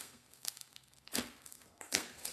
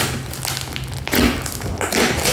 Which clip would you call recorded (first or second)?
second